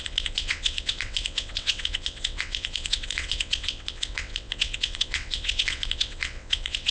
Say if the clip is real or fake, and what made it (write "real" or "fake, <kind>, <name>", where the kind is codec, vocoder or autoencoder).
fake, vocoder, WaveNeXt